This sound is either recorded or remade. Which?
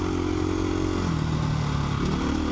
recorded